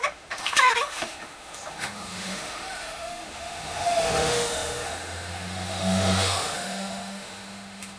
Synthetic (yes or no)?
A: yes